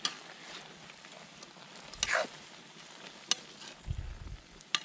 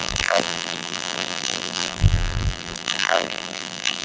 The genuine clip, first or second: first